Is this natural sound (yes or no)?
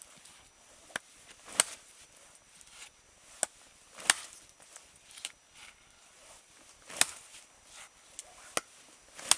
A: yes